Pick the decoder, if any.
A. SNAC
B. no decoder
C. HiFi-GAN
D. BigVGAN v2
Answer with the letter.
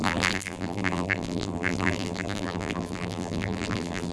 D